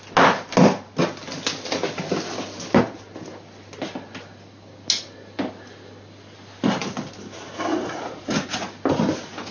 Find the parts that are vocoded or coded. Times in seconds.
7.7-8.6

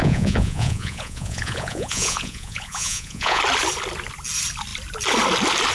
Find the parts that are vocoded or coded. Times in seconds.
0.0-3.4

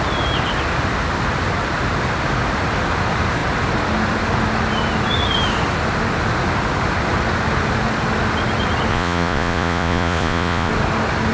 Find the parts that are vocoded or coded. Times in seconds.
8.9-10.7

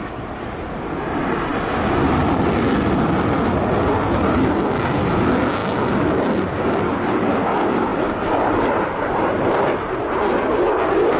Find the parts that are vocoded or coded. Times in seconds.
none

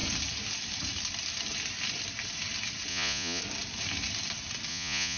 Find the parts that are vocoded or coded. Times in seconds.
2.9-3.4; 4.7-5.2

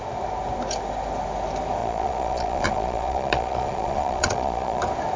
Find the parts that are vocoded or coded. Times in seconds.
1.8-4.8